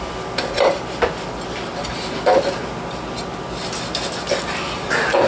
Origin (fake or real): real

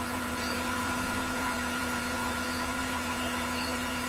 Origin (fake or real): fake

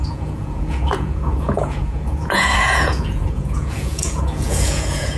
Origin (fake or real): fake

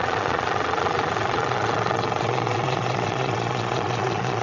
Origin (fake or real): fake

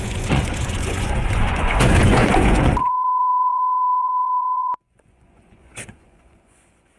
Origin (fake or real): fake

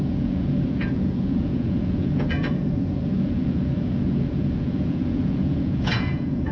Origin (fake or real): fake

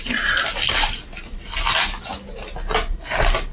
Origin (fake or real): real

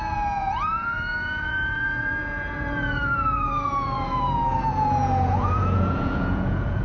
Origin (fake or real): fake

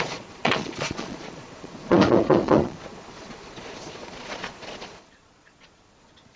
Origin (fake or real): fake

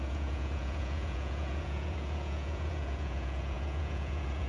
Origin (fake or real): fake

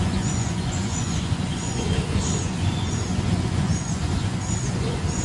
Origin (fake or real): fake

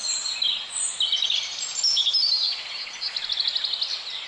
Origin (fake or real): real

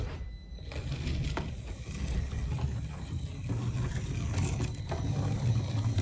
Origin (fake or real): real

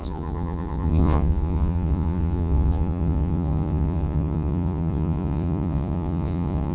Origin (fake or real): fake